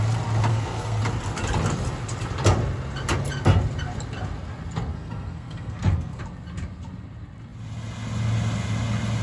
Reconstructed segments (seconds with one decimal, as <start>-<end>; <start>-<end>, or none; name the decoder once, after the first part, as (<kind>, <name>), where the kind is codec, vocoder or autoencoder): 0.5-1.0 (codec, SNAC); 4.9-6.2